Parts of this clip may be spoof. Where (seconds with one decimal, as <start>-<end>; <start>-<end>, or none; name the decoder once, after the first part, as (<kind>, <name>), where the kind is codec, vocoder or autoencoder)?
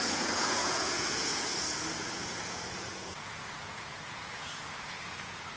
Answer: 0.0-5.6 (vocoder, Vocos)